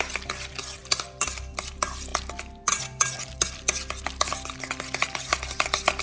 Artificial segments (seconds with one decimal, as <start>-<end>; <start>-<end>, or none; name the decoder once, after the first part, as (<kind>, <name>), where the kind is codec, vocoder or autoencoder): none